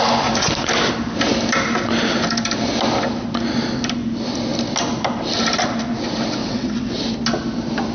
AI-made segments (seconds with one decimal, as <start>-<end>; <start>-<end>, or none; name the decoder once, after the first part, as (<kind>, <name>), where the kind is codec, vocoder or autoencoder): 6.4-7.0 (vocoder, WaveNeXt)